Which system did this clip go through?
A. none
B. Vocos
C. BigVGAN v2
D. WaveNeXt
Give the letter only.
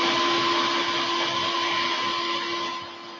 A